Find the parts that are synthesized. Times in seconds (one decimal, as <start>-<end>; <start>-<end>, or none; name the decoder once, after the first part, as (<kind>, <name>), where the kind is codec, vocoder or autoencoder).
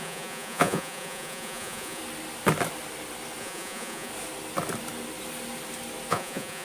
0.0-2.0 (vocoder, Vocos); 3.4-4.1; 6.1-6.6